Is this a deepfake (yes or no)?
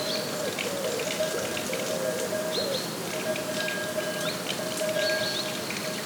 no